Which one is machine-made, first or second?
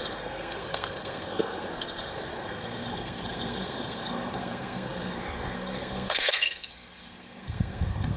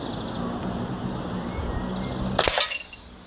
first